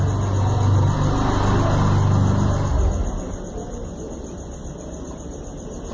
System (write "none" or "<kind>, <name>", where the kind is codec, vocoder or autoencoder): none